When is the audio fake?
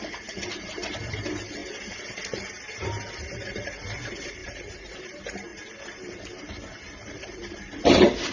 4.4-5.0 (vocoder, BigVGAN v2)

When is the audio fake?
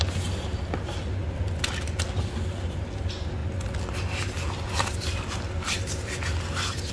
none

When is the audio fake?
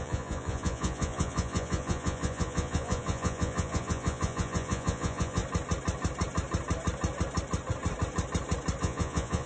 0.0-5.4 (vocoder, Vocos); 8.8-9.5